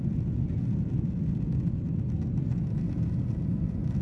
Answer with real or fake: real